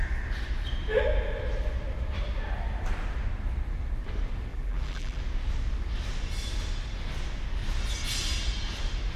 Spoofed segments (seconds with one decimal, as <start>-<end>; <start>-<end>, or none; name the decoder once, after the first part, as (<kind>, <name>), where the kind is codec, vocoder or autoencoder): 4.5-5.2 (vocoder, BigVGAN v2)